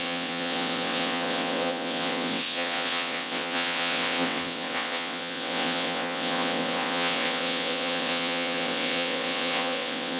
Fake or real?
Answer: fake